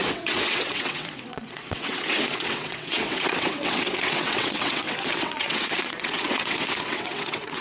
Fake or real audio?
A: fake